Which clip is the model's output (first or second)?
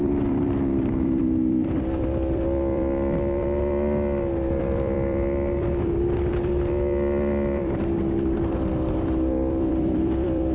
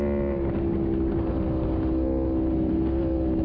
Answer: first